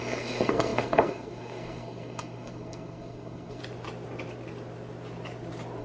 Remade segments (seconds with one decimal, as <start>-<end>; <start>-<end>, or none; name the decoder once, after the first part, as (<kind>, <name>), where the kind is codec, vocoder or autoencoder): 0.0-3.6 (codec, SNAC)